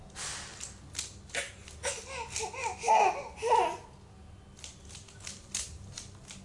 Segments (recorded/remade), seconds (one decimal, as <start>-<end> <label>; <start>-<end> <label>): 0.0-6.4 recorded